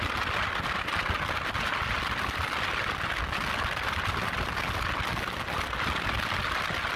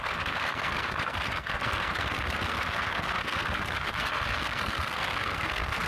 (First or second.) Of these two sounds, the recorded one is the first